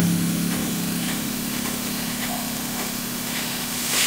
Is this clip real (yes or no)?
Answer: no